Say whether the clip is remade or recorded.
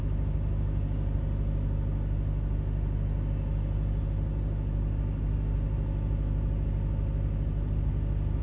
recorded